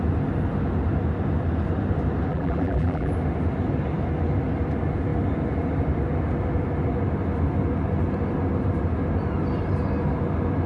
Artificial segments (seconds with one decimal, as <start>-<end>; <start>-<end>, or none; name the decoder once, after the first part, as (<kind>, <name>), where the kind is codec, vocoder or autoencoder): 2.3-3.1 (vocoder, BigVGAN v2)